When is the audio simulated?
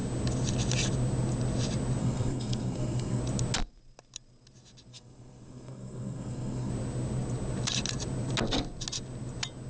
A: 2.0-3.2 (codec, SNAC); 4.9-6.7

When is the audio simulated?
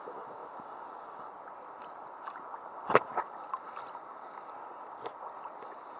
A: none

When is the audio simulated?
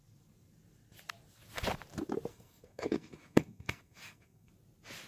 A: 2.3-4.5 (codec, SNAC)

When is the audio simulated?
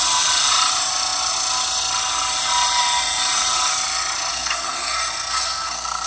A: 4.3-6.1 (codec, SNAC)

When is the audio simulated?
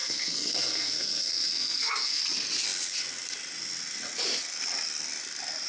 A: 0.0-2.2 (codec, SNAC)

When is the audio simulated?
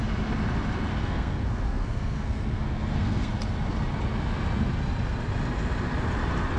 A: 0.9-3.3 (codec, SNAC)